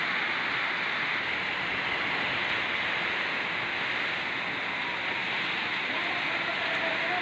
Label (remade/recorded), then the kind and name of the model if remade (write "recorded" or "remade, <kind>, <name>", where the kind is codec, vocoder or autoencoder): recorded